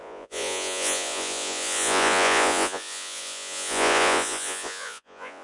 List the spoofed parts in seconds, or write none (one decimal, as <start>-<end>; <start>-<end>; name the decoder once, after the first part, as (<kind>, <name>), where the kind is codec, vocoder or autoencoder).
0.0-5.4 (vocoder, Vocos)